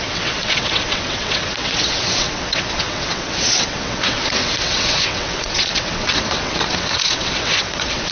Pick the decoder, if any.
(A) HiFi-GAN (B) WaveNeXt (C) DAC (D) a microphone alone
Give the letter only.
B